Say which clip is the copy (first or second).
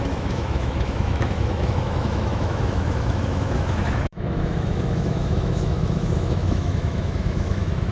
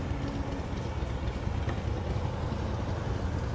first